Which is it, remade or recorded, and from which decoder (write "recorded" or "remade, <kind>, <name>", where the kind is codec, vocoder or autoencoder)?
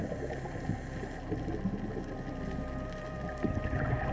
recorded